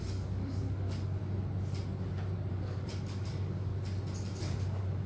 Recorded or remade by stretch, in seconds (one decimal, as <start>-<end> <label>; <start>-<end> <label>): 0.0-1.2 remade; 1.2-2.5 recorded; 2.5-3.7 remade; 3.7-4.4 recorded; 4.4-5.1 remade